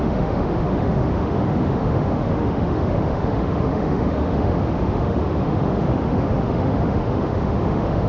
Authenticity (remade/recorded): remade